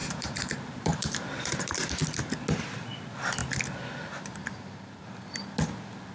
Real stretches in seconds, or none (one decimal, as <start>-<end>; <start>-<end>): 2.0-3.4; 5.0-6.1